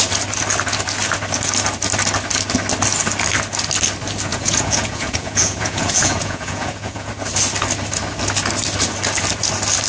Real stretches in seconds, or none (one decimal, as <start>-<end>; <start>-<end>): 0.0-4.3; 7.1-9.9